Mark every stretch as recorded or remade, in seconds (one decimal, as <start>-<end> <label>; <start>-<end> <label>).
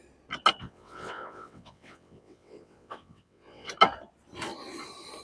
0.0-0.6 recorded; 0.6-3.7 remade; 3.7-5.2 recorded